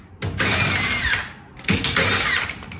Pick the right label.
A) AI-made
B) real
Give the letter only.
B